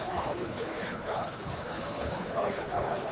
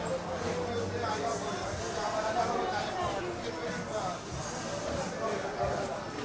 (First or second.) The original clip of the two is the second